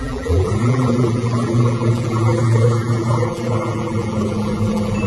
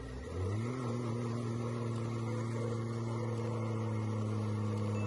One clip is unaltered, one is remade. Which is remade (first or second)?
first